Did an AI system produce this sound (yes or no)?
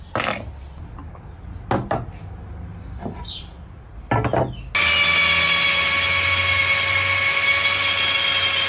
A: no